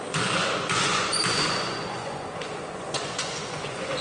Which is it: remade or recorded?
remade